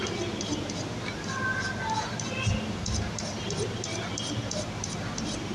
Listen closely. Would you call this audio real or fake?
real